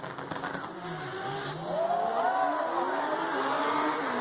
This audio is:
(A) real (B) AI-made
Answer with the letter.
A